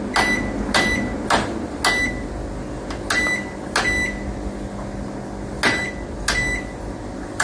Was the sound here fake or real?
real